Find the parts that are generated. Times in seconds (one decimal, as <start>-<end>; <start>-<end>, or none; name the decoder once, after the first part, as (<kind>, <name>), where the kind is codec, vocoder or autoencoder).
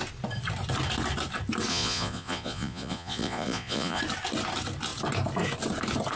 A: 1.7-4.0 (vocoder, Vocos)